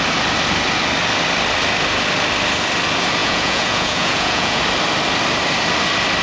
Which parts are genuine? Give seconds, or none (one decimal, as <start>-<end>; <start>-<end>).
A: 0.0-3.2; 4.6-6.2